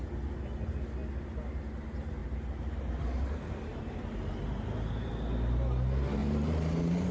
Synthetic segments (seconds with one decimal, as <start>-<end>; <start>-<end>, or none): 2.2-3.0; 3.7-5.1; 6.2-7.1